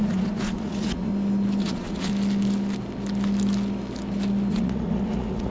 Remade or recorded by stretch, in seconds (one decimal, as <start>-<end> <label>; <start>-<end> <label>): 0.0-1.1 remade; 1.1-1.6 recorded; 1.6-2.1 remade; 2.1-4.5 recorded; 4.5-5.5 remade